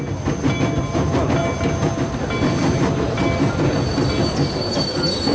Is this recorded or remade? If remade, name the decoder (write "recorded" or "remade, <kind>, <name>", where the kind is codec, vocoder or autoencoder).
recorded